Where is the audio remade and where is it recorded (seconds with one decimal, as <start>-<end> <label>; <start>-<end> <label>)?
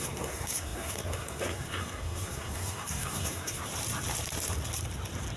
0.0-3.6 remade; 3.6-5.4 recorded